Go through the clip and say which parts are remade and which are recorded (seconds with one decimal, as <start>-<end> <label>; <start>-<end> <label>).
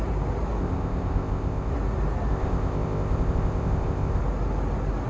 0.0-0.6 recorded; 0.6-1.7 remade; 1.7-2.3 recorded; 2.3-4.2 remade; 4.2-5.1 recorded